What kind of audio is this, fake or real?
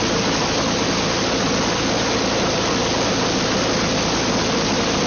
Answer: real